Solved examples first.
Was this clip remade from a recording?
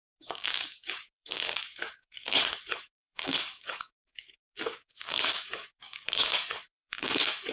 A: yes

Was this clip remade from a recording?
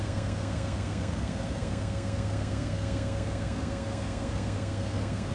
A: yes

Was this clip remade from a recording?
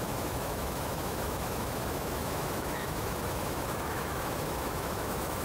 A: yes